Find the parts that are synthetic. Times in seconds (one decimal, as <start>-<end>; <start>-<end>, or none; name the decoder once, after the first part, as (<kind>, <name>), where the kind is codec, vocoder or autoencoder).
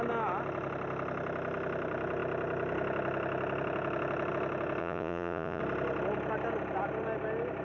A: 4.8-5.6 (vocoder, Vocos)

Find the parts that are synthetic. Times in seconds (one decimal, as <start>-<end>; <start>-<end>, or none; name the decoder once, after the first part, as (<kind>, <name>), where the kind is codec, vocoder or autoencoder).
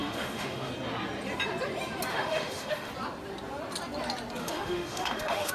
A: 0.0-0.7 (autoencoder, DAC-VAE); 2.1-2.9; 4.4-5.5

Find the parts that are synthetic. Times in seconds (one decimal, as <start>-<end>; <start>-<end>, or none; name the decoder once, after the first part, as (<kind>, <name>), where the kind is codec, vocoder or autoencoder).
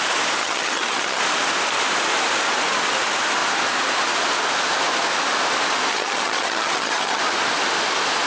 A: 0.4-1.2 (vocoder, HiFi-GAN); 5.9-7.2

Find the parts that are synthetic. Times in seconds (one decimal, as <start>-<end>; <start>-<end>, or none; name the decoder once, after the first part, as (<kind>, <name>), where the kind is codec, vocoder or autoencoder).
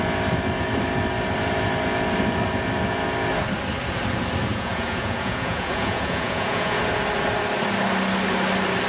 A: 4.5-6.8 (vocoder, Vocos)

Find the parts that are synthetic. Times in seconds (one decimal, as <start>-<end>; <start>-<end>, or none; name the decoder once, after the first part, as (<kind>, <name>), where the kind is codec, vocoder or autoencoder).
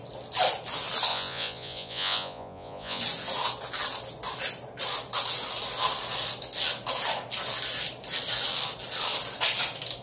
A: 1.1-3.0 (vocoder, Vocos)